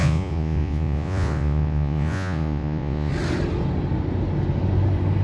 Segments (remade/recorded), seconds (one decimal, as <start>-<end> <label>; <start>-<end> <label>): 0.0-3.1 remade; 3.1-5.2 recorded